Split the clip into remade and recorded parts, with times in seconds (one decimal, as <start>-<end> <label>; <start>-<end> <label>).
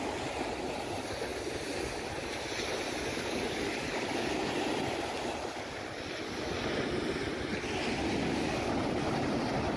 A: 0.0-3.1 recorded; 3.1-4.5 remade; 4.5-8.2 recorded; 8.2-8.7 remade; 8.7-9.8 recorded